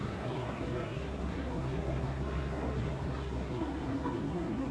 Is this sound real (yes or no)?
no